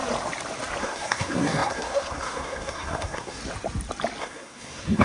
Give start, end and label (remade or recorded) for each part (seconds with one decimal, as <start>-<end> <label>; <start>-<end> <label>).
0.0-0.8 recorded; 0.8-3.4 remade; 3.4-4.2 recorded; 4.2-5.0 remade